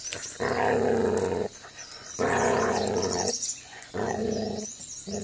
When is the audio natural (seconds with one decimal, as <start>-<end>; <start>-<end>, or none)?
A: 0.0-1.9; 4.8-5.2